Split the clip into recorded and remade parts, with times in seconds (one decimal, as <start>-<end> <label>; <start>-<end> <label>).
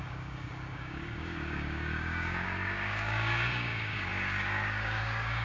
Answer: 0.0-5.4 remade